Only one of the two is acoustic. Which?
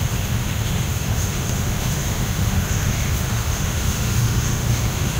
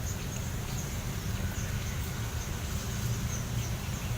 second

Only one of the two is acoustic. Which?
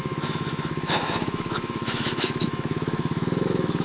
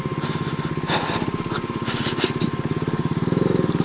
second